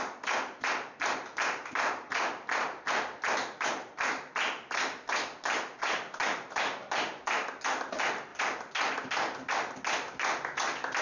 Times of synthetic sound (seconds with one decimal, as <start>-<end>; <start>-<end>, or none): none